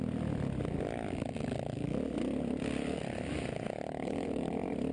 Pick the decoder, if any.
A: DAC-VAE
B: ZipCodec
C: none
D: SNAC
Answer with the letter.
C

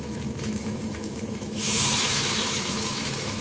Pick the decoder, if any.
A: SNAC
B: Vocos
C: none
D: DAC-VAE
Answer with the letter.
D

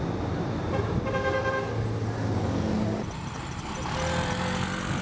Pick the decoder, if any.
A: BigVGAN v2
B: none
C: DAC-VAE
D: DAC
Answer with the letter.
B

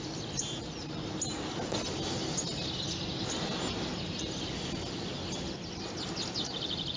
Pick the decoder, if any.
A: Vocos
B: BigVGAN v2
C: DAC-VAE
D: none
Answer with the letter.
D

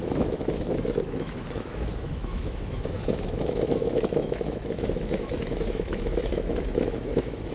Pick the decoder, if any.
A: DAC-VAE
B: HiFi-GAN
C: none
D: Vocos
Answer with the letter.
A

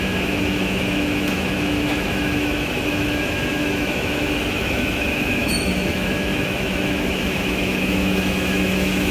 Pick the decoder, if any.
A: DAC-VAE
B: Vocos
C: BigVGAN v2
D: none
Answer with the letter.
A